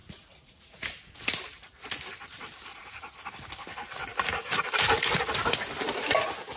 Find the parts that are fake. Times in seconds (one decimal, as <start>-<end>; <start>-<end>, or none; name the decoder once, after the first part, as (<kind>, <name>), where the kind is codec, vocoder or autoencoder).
0.0-0.9 (vocoder, Vocos); 2.7-3.3